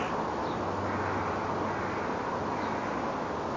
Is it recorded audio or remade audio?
recorded